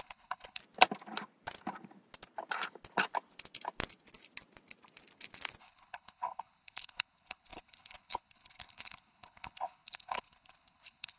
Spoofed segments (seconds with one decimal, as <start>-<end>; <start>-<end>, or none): 0.0-0.6; 5.6-11.2

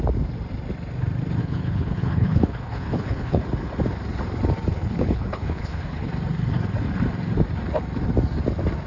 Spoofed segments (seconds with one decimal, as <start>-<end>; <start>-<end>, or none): 1.4-3.4; 4.7-6.1

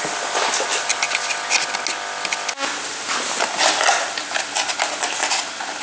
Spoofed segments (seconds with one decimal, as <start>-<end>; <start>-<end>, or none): none